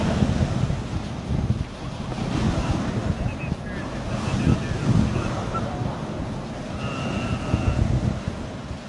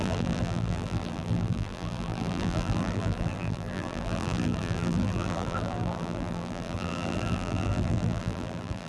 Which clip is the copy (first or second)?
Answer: second